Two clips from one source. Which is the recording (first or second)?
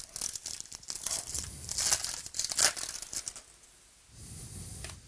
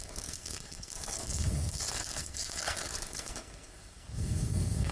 first